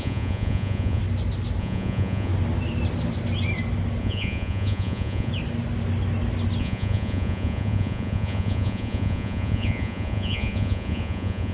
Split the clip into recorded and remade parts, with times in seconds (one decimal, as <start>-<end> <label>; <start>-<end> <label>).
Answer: 0.0-1.0 remade; 1.0-1.6 recorded; 1.6-2.3 remade; 2.3-4.0 recorded; 4.0-5.3 remade; 5.3-6.6 recorded; 6.6-11.5 remade